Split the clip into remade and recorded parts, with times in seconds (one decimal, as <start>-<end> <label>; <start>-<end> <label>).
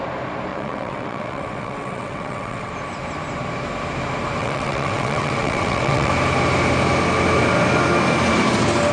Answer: 0.0-0.5 recorded; 0.5-2.7 remade; 2.7-4.4 recorded; 4.4-6.1 remade; 6.1-8.9 recorded